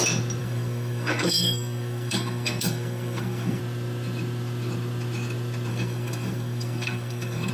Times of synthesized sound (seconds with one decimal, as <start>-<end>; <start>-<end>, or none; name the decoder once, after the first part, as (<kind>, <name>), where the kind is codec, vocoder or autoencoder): 0.4-3.6 (codec, SNAC); 5.7-7.5